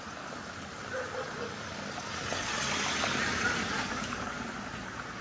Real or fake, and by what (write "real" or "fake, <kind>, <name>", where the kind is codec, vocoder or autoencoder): real